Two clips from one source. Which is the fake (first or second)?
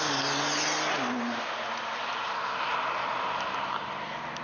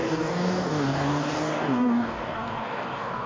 second